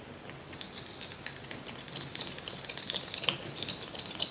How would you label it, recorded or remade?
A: recorded